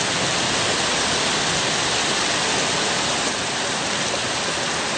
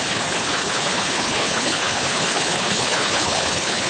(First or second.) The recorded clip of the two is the first